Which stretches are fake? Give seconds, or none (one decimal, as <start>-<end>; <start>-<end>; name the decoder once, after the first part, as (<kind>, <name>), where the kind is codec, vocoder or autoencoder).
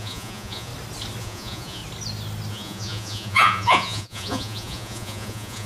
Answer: 0.0-0.7 (vocoder, Vocos); 1.2-1.8; 2.5-5.7